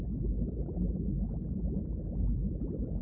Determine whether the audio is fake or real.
real